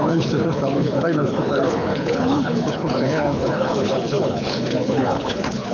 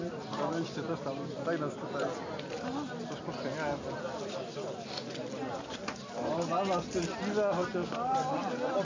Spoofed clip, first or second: first